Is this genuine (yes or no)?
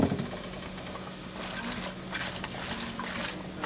yes